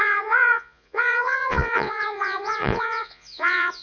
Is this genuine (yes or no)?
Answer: no